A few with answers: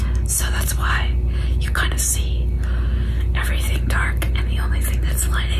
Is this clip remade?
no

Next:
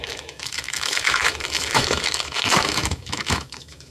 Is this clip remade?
yes